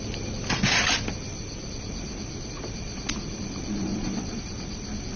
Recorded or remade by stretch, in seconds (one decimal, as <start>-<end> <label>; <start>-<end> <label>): 0.0-3.9 recorded; 3.9-4.4 remade; 4.4-5.2 recorded